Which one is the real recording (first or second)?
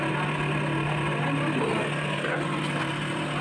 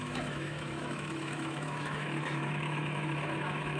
first